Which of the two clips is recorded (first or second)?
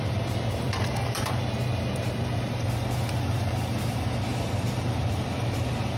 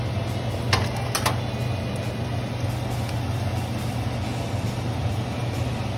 second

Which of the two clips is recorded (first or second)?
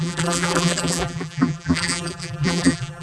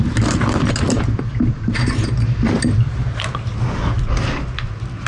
second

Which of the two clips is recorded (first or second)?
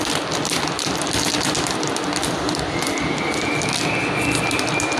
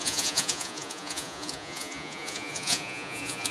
first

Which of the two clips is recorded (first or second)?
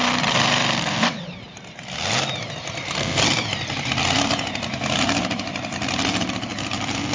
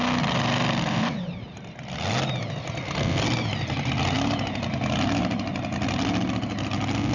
second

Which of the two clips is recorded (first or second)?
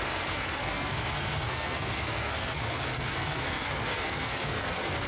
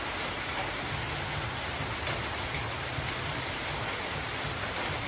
second